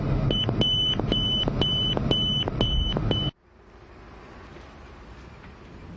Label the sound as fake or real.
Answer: real